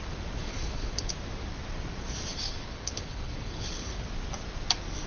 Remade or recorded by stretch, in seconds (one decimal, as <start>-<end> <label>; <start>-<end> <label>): 0.0-0.4 recorded; 0.4-1.1 remade; 1.1-2.3 recorded; 2.3-4.0 remade; 4.0-5.1 recorded

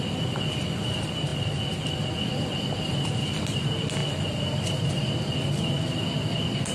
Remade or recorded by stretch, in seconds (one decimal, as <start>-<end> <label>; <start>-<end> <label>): 0.0-6.7 recorded